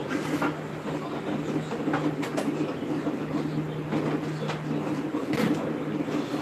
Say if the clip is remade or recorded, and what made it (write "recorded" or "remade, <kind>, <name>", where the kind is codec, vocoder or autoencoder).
recorded